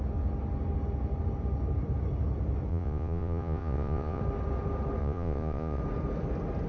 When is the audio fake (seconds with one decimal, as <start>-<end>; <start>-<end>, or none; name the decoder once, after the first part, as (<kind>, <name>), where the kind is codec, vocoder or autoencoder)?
2.7-4.2 (vocoder, Vocos); 5.0-5.8